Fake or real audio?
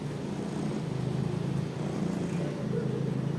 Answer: real